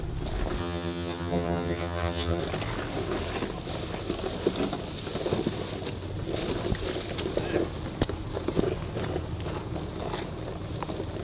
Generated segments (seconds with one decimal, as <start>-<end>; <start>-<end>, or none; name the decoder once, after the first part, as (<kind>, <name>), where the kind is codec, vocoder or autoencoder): 0.6-2.4 (vocoder, HiFi-GAN)